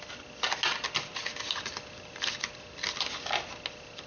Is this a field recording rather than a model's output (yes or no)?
yes